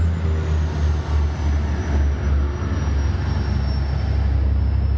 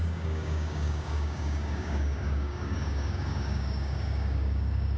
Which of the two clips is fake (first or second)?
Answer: second